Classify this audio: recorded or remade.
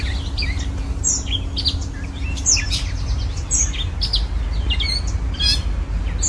recorded